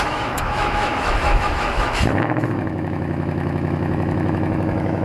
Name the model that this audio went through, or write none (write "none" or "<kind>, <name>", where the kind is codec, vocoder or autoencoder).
autoencoder, DAC-VAE